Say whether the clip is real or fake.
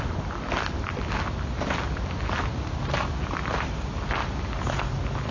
real